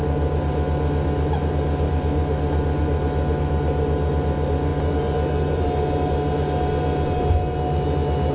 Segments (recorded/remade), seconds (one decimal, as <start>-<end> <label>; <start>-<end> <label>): 0.0-8.3 recorded